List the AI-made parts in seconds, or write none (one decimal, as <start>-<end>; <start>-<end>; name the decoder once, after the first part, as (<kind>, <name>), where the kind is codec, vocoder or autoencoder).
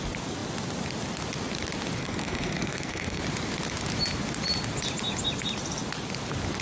2.0-3.2 (codec, SNAC)